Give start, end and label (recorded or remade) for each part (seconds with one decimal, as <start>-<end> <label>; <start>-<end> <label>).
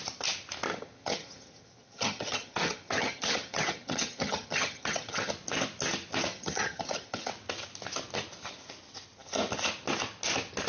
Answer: 0.0-0.7 recorded; 0.7-5.3 remade; 5.3-6.3 recorded; 6.3-7.3 remade; 7.3-10.7 recorded